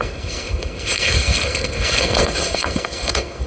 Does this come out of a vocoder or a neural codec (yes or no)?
yes